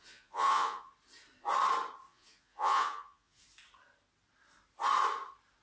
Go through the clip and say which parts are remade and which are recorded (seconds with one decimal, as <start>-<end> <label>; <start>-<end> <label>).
0.0-0.9 remade; 0.9-2.1 recorded; 2.1-3.4 remade; 3.4-5.6 recorded